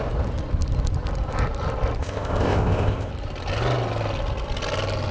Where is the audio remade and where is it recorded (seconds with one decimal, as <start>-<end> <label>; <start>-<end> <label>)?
0.0-2.0 recorded; 2.0-3.1 remade; 3.1-5.1 recorded

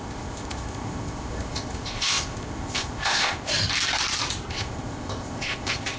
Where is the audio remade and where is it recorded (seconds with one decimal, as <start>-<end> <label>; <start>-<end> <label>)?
0.0-3.5 remade; 3.5-4.5 recorded; 4.5-6.0 remade

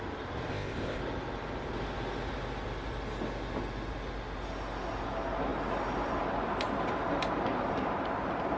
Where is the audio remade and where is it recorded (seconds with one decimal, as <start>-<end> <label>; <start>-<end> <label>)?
0.0-0.5 recorded; 0.5-1.0 remade; 1.0-8.6 recorded

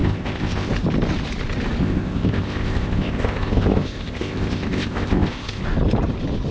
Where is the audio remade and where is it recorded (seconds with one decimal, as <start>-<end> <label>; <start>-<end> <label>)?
0.0-0.7 remade; 0.7-1.8 recorded; 1.8-5.6 remade; 5.6-6.5 recorded

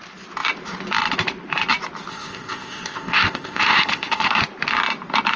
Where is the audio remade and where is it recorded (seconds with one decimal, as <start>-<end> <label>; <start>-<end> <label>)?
0.0-2.1 recorded; 2.1-4.4 remade; 4.4-5.4 recorded

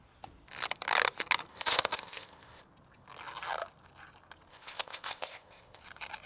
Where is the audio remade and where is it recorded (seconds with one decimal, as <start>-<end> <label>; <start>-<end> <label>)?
0.0-1.5 recorded; 1.5-2.6 remade; 2.6-4.5 recorded; 4.5-5.8 remade; 5.8-6.3 recorded

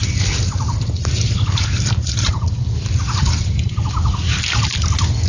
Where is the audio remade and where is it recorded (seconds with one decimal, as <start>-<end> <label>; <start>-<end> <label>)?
0.0-5.3 recorded

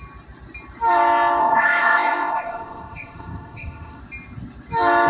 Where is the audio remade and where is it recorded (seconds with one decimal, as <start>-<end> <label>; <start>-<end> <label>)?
0.0-1.4 recorded; 1.4-4.0 remade; 4.0-5.1 recorded